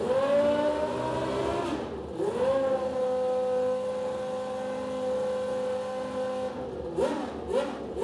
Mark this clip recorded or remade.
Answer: recorded